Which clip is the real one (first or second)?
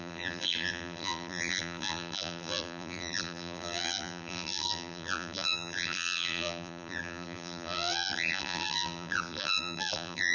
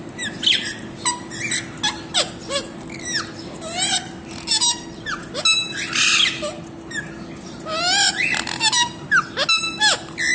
second